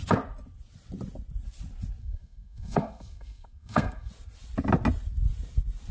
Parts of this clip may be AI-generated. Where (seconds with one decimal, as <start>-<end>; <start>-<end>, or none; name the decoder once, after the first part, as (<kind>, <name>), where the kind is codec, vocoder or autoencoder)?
2.0-4.1 (codec, SNAC)